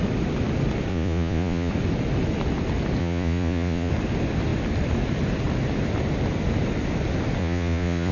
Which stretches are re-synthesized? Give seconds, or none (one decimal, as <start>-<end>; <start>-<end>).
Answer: 0.9-1.7; 3.0-3.9; 7.4-8.1